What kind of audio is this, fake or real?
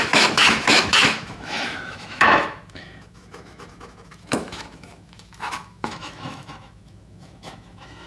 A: fake